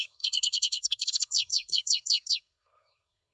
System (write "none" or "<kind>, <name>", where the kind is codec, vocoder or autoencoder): codec, SNAC